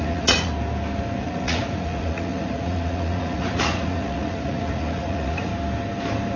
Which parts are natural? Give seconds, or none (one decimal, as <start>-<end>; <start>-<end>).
0.5-1.2; 5.5-6.4